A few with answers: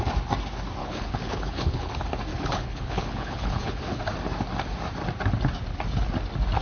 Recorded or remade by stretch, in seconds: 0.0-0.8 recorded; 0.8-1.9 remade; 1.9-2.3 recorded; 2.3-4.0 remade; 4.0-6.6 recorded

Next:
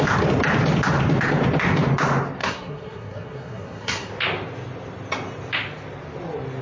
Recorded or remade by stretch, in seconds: 0.0-2.4 recorded; 2.4-4.1 remade; 4.1-6.6 recorded

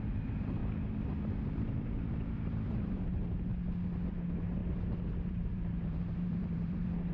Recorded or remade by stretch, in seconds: 0.0-0.6 remade; 0.6-1.1 recorded; 1.1-3.5 remade; 3.5-4.1 recorded; 4.1-4.6 remade; 4.6-5.3 recorded; 5.3-7.1 remade

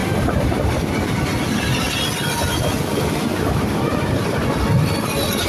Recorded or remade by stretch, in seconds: 0.0-0.8 remade; 0.8-3.3 recorded; 3.3-4.5 remade; 4.5-5.5 recorded